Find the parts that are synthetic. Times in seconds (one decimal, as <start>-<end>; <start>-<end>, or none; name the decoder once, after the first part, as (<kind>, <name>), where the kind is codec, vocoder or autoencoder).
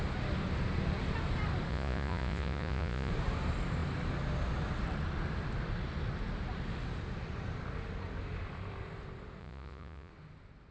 1.7-3.1 (vocoder, Vocos); 9.4-10.1